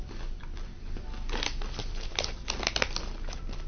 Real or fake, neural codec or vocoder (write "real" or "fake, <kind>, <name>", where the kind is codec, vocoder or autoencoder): real